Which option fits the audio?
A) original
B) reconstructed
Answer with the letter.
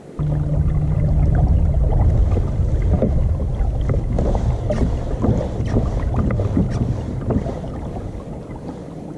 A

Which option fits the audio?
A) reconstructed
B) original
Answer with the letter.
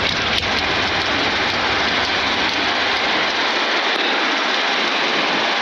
B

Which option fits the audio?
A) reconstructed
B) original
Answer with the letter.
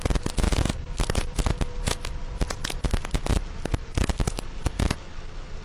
B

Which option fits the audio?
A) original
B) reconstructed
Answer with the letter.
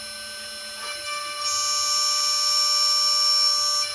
A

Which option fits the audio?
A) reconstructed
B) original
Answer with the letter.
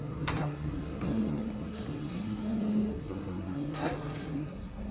A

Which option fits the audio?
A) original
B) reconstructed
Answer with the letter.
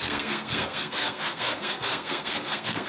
B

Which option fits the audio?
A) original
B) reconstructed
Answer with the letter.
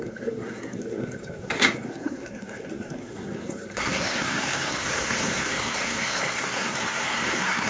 B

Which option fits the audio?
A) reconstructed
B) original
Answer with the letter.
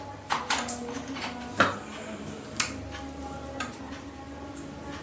B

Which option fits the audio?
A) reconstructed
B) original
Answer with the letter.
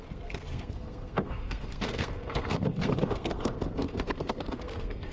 A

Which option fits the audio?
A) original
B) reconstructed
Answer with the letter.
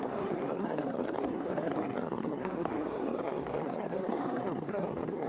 B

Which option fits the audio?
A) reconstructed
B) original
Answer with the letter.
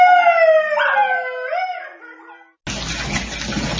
B